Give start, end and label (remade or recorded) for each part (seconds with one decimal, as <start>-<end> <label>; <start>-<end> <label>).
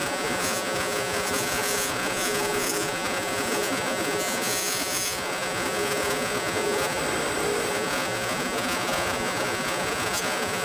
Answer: 0.0-7.0 remade; 7.0-7.7 recorded; 7.7-10.6 remade